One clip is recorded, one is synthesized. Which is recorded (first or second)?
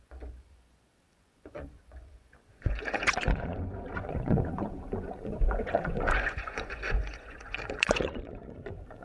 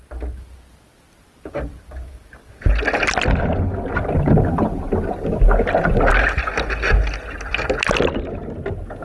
second